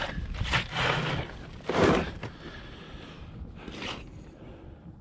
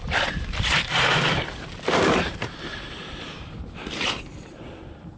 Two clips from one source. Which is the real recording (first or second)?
first